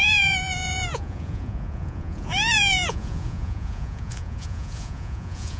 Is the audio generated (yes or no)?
yes